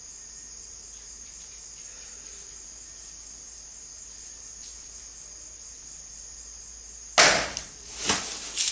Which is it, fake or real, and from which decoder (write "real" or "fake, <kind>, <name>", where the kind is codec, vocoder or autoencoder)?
real